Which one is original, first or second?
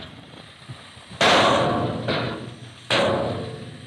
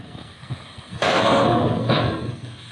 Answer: first